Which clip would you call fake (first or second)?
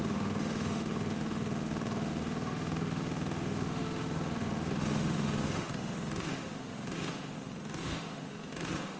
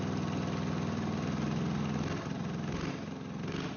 first